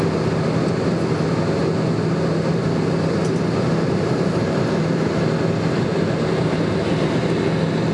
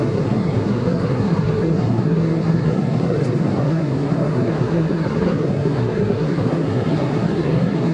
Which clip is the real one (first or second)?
first